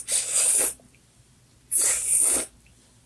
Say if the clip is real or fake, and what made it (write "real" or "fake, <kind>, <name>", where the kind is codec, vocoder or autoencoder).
real